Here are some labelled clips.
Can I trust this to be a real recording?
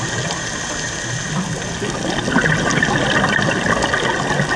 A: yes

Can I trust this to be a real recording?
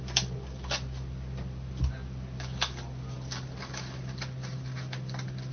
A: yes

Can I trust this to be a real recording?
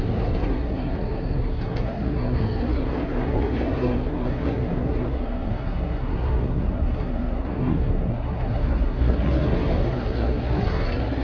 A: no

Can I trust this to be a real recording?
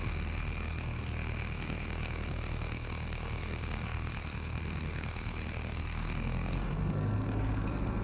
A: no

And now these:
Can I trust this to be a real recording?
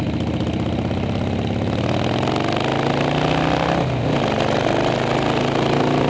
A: yes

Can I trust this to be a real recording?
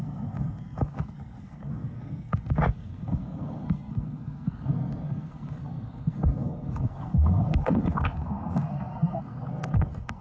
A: no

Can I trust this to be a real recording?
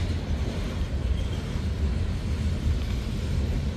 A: yes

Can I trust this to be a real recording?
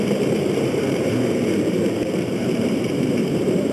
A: no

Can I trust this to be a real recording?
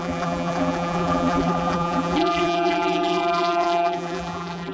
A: no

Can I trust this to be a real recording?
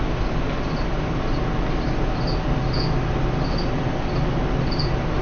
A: yes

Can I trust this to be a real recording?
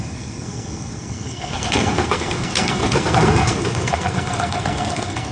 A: no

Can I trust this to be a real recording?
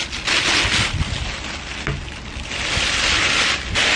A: yes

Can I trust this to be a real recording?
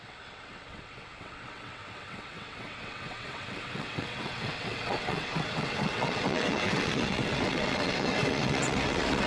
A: no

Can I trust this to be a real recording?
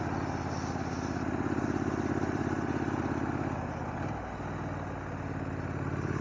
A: yes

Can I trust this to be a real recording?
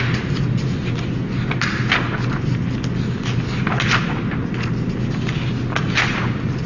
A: yes